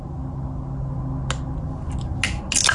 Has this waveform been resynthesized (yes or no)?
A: no